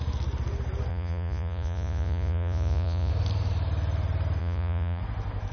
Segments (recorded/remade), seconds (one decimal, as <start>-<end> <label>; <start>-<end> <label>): 0.0-0.9 recorded; 0.9-3.1 remade; 3.1-4.4 recorded; 4.4-5.0 remade; 5.0-5.5 recorded